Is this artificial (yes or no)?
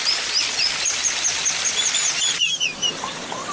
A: no